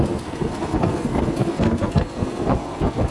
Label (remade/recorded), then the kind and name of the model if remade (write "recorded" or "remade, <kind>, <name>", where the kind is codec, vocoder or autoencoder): remade, codec, SNAC